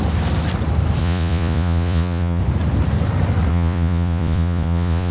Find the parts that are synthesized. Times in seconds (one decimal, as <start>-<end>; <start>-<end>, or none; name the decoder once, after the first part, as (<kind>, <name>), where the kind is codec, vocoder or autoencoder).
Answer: 1.0-2.4 (vocoder, Vocos); 3.5-5.1